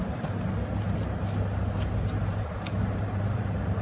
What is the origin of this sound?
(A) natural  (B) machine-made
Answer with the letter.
A